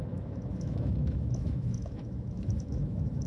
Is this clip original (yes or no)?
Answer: no